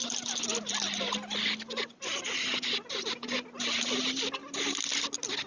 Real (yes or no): yes